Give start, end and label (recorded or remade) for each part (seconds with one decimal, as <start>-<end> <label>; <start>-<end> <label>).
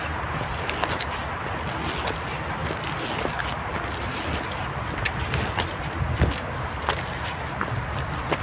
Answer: 0.0-8.4 recorded